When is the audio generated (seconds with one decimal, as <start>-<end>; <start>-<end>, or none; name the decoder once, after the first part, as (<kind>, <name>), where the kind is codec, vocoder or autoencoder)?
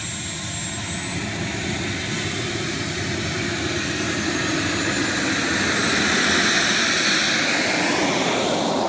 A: none